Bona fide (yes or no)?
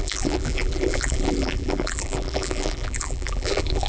no